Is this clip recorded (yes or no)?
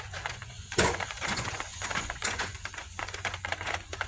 no